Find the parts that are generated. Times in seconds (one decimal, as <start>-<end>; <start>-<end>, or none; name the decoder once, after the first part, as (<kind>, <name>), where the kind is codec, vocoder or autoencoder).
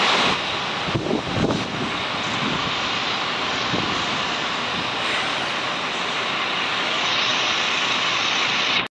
none